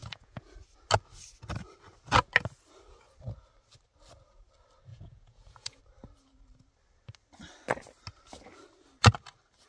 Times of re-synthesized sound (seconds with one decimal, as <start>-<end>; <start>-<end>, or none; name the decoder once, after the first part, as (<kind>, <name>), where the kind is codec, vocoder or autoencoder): 0.0-0.5 (vocoder, Vocos); 4.9-5.8